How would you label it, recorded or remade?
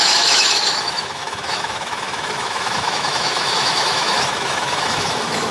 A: remade